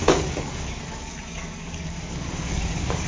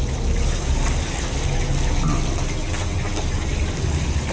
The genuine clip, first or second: second